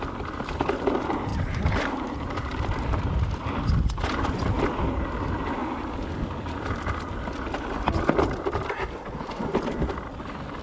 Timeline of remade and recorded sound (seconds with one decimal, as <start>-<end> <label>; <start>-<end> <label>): 0.0-1.3 recorded; 1.3-3.4 remade; 3.4-10.6 recorded

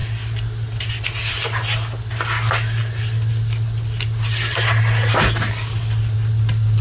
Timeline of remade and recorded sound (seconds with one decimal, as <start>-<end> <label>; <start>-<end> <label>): 0.0-6.8 recorded

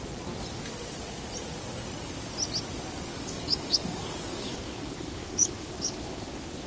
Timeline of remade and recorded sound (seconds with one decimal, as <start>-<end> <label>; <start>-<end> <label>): 0.0-3.1 recorded; 3.1-6.3 remade; 6.3-6.7 recorded

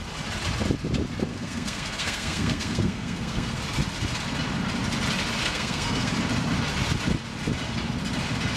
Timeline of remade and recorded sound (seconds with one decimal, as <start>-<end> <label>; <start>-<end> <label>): 0.0-1.3 recorded; 1.3-3.6 remade; 3.6-5.4 recorded; 5.4-6.1 remade; 6.1-8.6 recorded

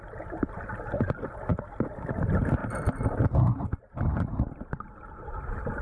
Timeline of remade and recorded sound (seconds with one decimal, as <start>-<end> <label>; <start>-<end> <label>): 0.0-5.8 recorded

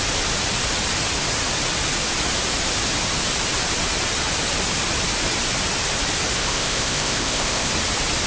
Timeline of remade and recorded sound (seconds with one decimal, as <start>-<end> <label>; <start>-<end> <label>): 0.0-6.4 recorded; 6.4-7.7 remade; 7.7-8.3 recorded

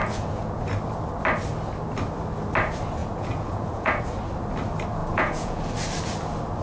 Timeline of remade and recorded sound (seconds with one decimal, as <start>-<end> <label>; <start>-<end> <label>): 0.0-0.6 remade; 0.6-3.0 recorded; 3.0-4.0 remade; 4.0-5.0 recorded; 5.0-5.6 remade; 5.6-6.6 recorded

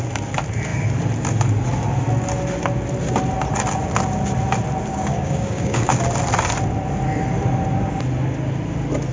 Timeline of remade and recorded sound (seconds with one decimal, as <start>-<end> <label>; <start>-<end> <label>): 0.0-4.9 recorded; 4.9-6.0 remade; 6.0-9.1 recorded